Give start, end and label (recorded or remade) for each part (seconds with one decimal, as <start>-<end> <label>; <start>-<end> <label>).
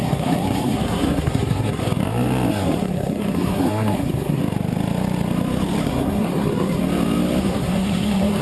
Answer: 0.0-1.8 remade; 1.8-2.5 recorded; 2.5-4.4 remade; 4.4-5.8 recorded; 5.8-6.8 remade; 6.8-7.4 recorded; 7.4-8.4 remade